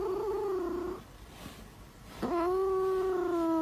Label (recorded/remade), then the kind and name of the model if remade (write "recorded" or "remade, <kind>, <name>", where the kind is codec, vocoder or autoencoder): recorded